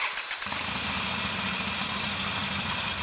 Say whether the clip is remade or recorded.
recorded